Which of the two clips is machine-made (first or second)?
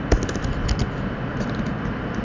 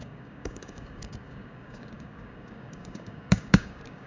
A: second